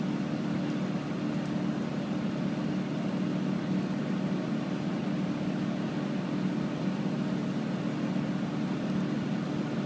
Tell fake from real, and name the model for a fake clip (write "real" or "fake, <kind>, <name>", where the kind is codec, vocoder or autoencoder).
real